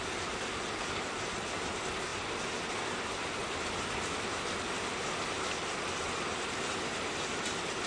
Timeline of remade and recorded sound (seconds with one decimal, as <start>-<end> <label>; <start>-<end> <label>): 0.0-3.4 recorded; 3.4-4.4 remade; 4.4-6.3 recorded; 6.3-7.1 remade; 7.1-7.9 recorded